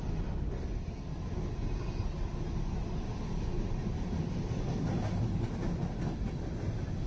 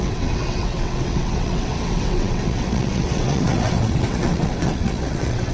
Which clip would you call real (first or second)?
first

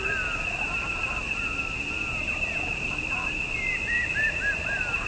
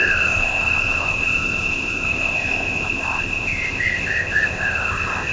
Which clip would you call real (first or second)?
first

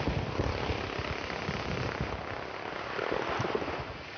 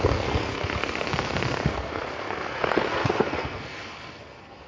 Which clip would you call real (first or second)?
first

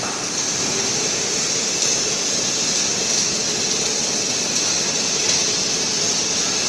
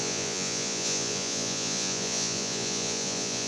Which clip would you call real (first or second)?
first